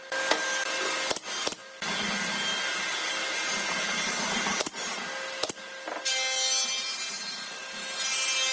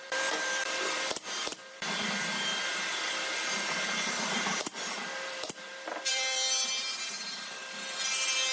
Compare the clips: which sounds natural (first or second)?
first